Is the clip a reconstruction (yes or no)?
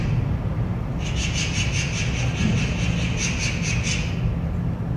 no